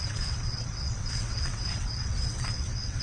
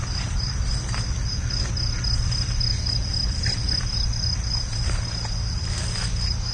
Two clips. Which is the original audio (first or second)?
second